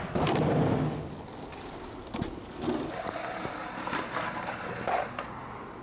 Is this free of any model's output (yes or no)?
yes